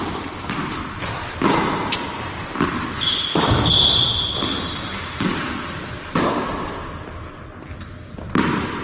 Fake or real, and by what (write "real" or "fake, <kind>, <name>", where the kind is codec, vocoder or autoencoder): real